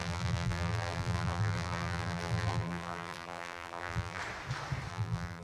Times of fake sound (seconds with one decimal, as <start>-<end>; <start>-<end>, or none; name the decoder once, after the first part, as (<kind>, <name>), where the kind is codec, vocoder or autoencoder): 0.0-4.2 (vocoder, BigVGAN v2); 4.9-5.4